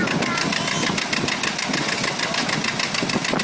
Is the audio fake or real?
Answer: real